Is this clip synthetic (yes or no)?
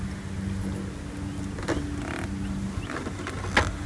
no